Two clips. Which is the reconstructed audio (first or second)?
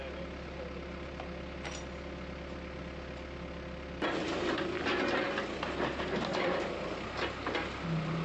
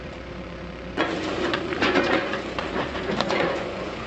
second